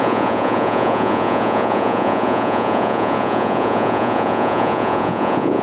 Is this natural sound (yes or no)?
no